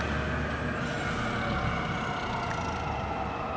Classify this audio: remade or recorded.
recorded